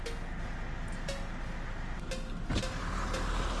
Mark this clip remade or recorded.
recorded